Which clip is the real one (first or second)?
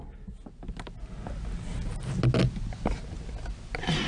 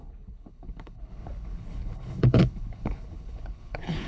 first